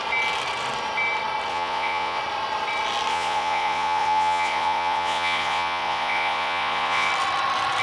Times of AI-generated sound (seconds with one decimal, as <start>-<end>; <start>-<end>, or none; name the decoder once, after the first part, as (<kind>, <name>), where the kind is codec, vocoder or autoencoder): 1.5-2.2 (vocoder, Vocos); 3.1-7.1